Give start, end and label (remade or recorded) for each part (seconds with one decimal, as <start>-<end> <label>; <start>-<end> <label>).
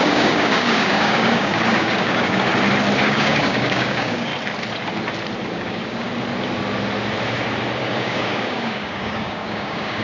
0.0-2.5 remade; 2.5-3.0 recorded; 3.0-4.3 remade; 4.3-5.5 recorded; 5.5-6.1 remade; 6.1-7.8 recorded; 7.8-10.0 remade